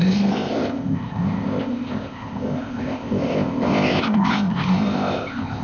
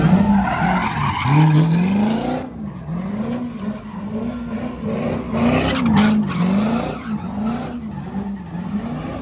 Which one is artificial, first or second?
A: first